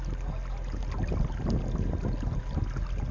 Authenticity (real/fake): real